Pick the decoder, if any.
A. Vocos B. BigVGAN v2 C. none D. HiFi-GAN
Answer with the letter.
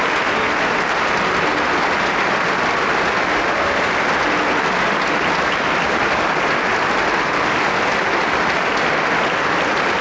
C